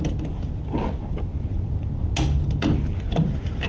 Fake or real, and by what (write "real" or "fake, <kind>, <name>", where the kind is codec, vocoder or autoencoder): real